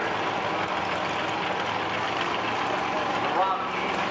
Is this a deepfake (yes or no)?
no